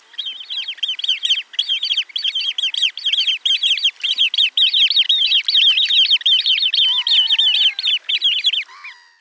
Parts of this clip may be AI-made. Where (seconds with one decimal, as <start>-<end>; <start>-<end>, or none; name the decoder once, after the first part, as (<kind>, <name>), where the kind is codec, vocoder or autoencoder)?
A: none